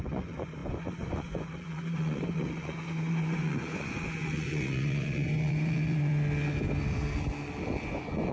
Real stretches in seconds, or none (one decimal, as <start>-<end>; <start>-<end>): 6.1-7.8